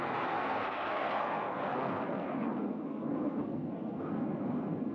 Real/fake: fake